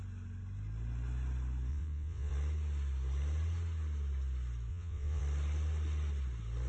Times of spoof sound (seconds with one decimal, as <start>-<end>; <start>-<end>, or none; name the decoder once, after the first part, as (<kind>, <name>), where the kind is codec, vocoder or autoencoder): 1.7-2.3 (vocoder, WaveNeXt); 4.7-5.2